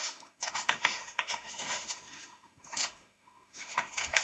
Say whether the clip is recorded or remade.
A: remade